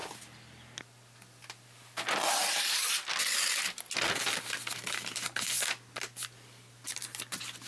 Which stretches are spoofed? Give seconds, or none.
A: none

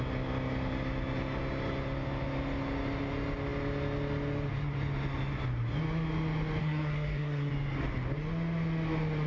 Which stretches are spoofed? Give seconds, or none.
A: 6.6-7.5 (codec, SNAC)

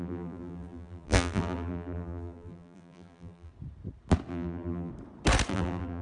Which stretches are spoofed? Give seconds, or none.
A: 0.0-3.5 (vocoder, BigVGAN v2); 4.3-4.9; 5.5-6.0

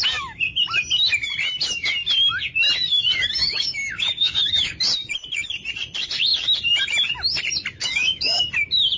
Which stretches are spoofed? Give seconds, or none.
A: 3.4-4.8 (codec, DAC); 7.8-8.5